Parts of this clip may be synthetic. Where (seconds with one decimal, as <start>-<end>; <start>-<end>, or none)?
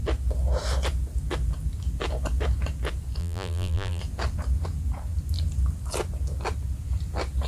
3.2-4.0